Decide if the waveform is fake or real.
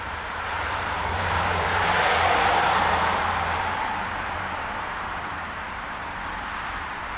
fake